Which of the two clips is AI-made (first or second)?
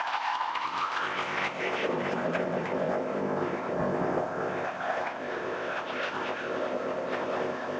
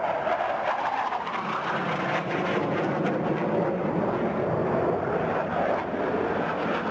first